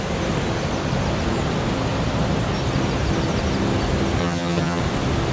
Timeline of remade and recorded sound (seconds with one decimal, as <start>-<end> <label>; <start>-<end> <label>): 0.0-4.2 recorded; 4.2-4.8 remade; 4.8-5.3 recorded